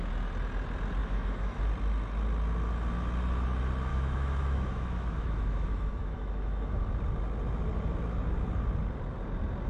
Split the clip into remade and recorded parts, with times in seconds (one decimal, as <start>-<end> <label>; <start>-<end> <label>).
0.0-1.0 recorded; 1.0-1.6 remade; 1.6-3.9 recorded; 3.9-6.8 remade; 6.8-9.7 recorded